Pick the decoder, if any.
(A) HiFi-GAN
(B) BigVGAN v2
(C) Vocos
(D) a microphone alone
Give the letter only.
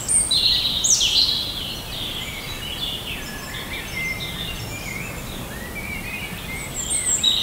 D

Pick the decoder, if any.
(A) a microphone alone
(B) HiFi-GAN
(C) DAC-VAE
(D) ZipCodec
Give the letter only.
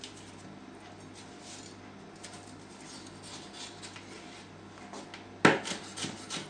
A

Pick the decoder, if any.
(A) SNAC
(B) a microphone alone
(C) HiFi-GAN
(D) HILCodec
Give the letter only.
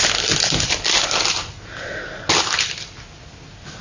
B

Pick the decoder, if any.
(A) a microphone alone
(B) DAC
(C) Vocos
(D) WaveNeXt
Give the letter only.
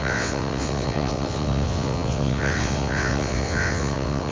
D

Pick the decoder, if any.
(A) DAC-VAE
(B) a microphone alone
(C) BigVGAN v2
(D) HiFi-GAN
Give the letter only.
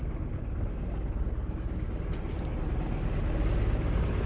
B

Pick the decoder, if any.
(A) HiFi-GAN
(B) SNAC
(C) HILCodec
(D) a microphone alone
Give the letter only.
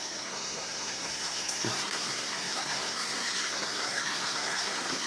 B